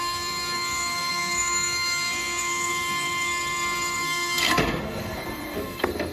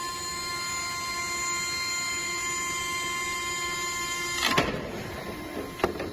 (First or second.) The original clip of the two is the second